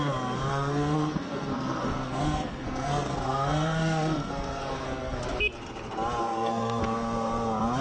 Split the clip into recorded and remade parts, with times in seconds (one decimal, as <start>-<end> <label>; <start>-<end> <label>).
0.0-0.5 recorded; 0.5-5.2 remade; 5.2-6.2 recorded; 6.2-6.8 remade; 6.8-7.8 recorded